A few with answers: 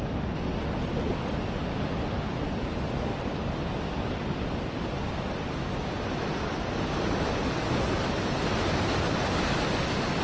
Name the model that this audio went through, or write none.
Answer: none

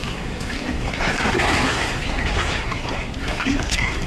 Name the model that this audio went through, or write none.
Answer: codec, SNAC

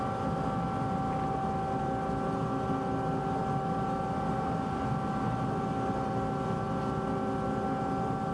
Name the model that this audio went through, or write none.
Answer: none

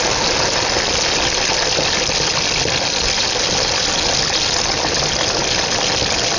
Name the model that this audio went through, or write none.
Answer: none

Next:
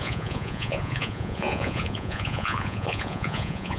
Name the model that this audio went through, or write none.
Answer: vocoder, Vocos